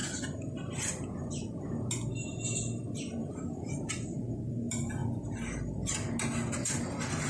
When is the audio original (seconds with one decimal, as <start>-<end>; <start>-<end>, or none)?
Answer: 1.3-3.2; 3.9-7.3